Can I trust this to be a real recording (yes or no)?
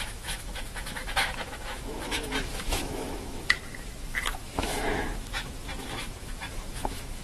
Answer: no